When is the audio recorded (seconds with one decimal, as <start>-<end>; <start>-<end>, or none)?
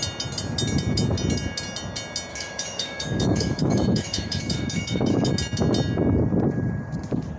0.0-2.3; 5.3-7.4